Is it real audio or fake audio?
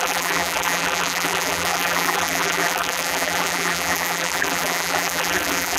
fake